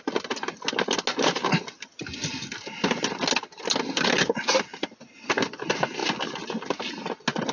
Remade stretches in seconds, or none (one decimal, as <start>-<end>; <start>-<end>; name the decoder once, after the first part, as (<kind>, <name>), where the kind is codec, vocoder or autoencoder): none